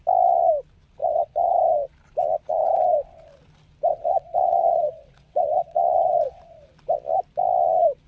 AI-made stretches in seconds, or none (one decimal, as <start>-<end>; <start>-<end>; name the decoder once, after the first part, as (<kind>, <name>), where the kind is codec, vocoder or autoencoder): 1.0-1.5 (vocoder, WaveNeXt); 3.9-6.4

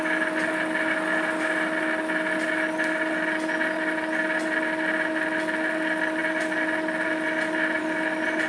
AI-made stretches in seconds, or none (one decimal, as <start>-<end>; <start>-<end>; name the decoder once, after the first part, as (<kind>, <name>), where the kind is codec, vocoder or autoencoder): none

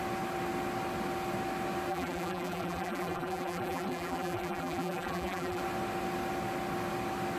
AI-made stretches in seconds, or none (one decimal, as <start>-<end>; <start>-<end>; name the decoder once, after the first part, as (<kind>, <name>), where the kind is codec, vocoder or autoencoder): 1.9-5.6 (vocoder, BigVGAN v2)

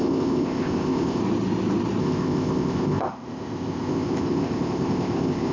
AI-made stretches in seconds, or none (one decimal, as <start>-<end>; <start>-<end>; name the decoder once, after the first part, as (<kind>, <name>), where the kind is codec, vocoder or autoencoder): 0.0-1.2 (codec, ZipCodec); 2.0-5.5